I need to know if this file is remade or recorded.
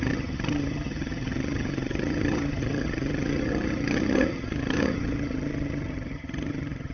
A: remade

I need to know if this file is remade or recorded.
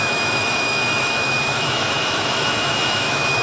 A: remade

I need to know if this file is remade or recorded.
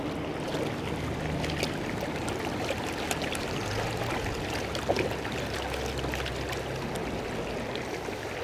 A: recorded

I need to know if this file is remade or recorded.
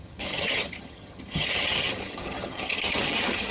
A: remade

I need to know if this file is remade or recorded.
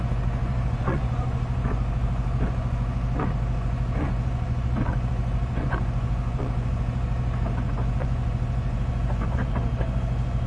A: remade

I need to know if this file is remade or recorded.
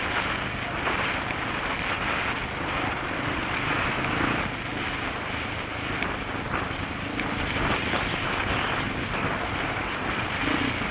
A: recorded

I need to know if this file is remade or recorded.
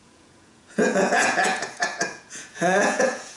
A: remade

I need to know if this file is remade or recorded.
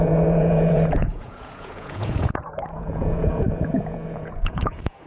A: remade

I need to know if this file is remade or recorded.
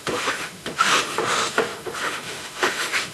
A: remade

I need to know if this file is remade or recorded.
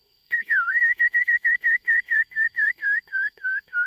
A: remade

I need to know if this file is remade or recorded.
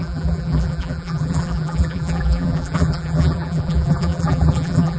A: remade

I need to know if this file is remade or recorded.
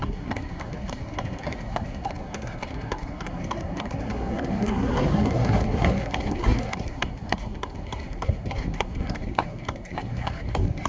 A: remade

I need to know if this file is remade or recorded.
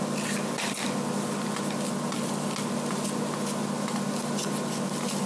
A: recorded